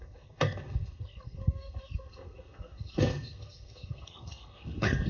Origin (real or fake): fake